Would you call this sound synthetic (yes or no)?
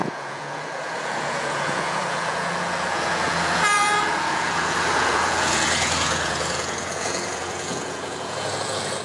yes